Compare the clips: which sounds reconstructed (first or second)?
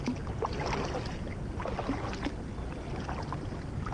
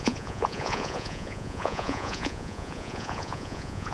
second